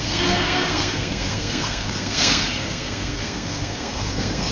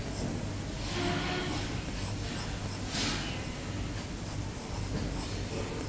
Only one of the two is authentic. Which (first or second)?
second